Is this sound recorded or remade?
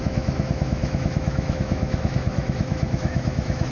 remade